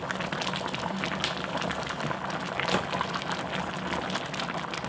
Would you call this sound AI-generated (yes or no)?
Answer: no